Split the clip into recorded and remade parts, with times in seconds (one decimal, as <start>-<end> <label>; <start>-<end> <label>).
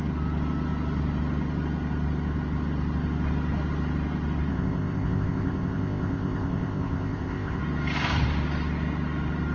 0.0-4.5 recorded; 4.5-7.6 remade; 7.6-9.5 recorded